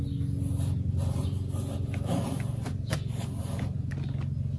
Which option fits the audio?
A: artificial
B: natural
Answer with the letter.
B